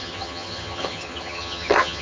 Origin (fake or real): fake